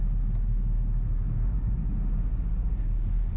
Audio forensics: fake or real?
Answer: real